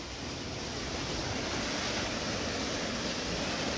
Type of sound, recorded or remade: recorded